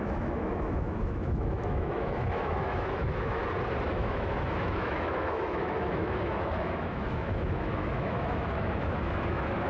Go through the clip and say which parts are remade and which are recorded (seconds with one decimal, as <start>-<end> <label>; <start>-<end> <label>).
0.0-3.4 remade; 3.4-3.9 recorded; 3.9-9.7 remade